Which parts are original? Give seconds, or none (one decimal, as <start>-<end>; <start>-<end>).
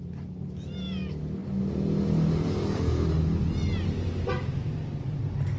0.0-5.6